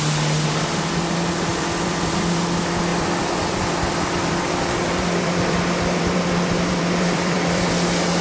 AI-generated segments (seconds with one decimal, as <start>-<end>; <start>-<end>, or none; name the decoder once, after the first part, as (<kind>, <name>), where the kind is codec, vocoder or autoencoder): 1.5-2.4 (vocoder, BigVGAN v2); 2.9-7.7